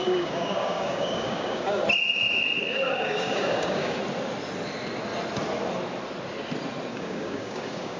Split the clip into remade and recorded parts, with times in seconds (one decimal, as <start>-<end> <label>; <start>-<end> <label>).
0.0-1.8 remade; 1.8-2.6 recorded; 2.6-4.0 remade; 4.0-6.9 recorded; 6.9-8.0 remade

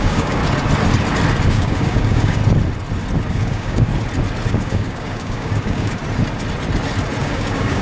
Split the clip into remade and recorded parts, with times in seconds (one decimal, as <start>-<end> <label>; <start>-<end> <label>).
0.0-0.4 remade; 0.4-1.5 recorded; 1.5-2.4 remade; 2.4-3.3 recorded; 3.3-3.9 remade; 3.9-4.5 recorded; 4.5-6.0 remade; 6.0-7.2 recorded; 7.2-7.8 remade

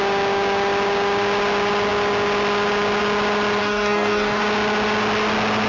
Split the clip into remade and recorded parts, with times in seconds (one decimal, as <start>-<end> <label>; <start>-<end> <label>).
0.0-3.6 recorded; 3.6-4.4 remade; 4.4-5.7 recorded

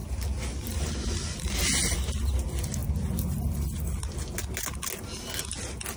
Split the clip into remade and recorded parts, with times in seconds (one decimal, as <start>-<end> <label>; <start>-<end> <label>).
0.0-6.0 recorded

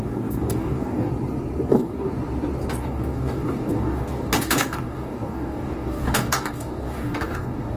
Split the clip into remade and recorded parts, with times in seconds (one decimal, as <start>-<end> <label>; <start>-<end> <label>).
0.0-1.1 remade; 1.1-1.7 recorded; 1.7-2.1 remade; 2.1-2.8 recorded; 2.8-7.8 remade

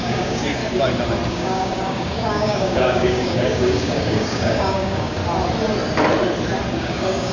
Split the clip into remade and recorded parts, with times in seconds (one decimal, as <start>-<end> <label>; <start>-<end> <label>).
0.0-0.6 remade; 0.6-1.3 recorded; 1.3-5.2 remade; 5.2-6.8 recorded; 6.8-7.3 remade

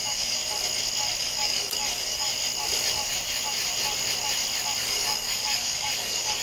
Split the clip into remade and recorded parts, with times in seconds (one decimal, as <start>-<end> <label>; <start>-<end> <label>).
0.0-0.4 remade; 0.4-1.2 recorded; 1.2-2.3 remade; 2.3-4.8 recorded; 4.8-6.4 remade